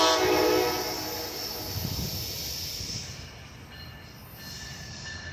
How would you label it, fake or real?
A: real